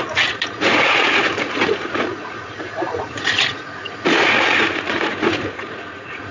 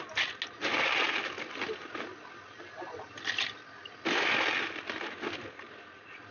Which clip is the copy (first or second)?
first